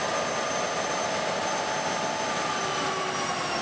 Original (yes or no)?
no